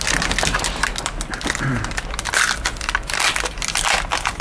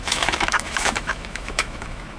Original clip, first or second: first